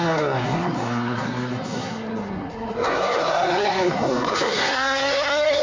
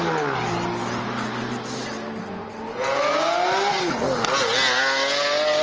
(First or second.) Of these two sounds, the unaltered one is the second